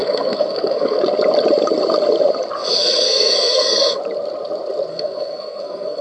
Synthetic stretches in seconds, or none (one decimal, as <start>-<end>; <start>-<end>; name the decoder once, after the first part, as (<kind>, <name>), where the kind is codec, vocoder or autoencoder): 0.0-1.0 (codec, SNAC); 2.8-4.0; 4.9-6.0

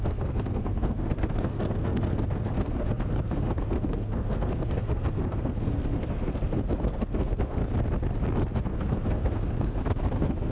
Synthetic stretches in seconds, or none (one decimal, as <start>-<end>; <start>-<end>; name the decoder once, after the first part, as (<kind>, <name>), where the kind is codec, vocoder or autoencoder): 0.0-7.6 (codec, SNAC); 8.6-10.5

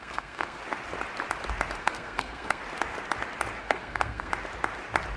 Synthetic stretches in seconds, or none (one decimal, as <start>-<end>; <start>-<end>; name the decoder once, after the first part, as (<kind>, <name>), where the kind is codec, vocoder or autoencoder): 0.0-0.6 (codec, SNAC); 1.8-2.6; 3.6-4.3